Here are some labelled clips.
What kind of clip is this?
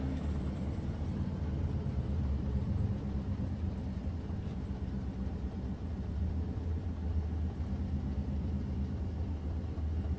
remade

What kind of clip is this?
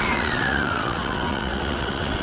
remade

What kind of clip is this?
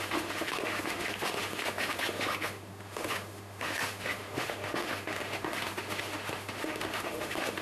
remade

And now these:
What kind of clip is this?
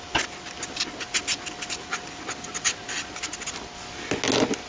recorded